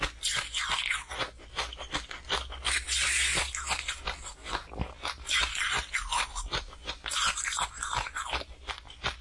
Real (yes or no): yes